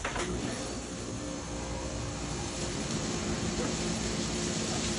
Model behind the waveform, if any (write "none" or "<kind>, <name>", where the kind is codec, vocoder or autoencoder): vocoder, BigVGAN v2